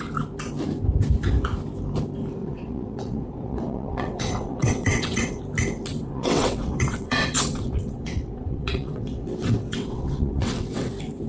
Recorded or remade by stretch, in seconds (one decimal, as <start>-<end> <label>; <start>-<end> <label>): 0.0-2.4 recorded; 2.4-5.4 remade; 5.4-5.9 recorded; 5.9-10.9 remade; 10.9-11.3 recorded